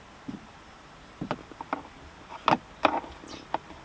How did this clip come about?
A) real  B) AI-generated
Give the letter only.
A